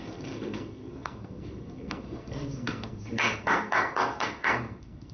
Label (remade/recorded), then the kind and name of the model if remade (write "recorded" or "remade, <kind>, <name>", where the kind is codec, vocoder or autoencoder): remade, codec, SNAC